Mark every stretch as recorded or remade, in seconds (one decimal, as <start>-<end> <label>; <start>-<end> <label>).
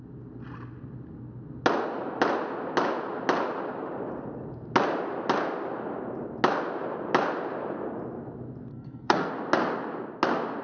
0.0-8.7 recorded; 8.7-9.3 remade; 9.3-10.6 recorded